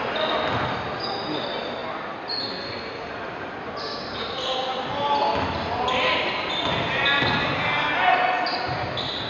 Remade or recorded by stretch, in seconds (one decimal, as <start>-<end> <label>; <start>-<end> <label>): 0.0-9.3 recorded